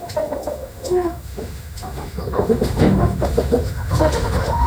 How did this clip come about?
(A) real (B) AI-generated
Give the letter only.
B